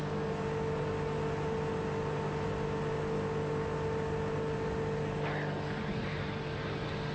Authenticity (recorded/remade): recorded